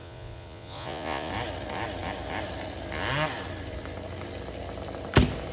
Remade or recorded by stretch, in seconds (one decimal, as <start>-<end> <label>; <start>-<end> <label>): 0.0-1.3 remade; 1.3-5.5 recorded